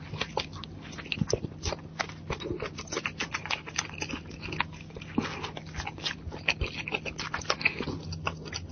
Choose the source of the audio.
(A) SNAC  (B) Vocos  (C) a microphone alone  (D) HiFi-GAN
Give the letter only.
C